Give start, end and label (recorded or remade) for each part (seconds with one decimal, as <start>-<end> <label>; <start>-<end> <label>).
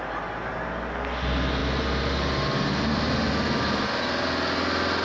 0.0-5.0 recorded